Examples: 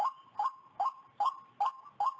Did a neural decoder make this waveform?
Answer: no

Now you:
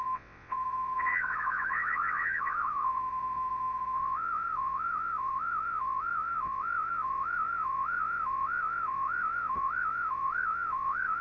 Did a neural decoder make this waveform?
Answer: yes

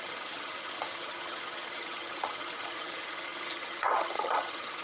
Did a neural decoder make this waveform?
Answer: yes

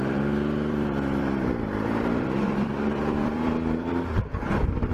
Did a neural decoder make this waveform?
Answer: yes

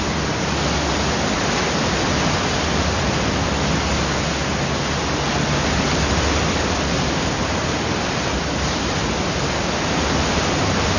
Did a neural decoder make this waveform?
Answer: no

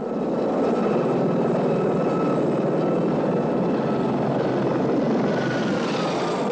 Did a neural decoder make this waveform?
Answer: no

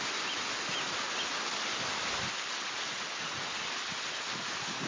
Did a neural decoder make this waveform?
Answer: no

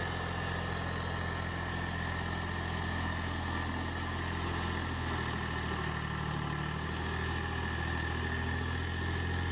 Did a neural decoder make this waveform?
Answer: no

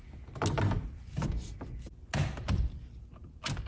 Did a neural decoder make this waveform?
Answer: no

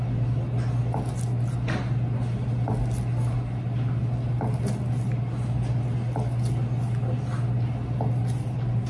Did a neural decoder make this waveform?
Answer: no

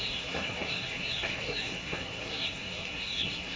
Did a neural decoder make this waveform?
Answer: yes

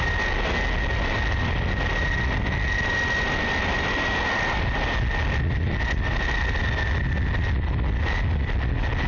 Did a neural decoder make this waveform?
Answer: no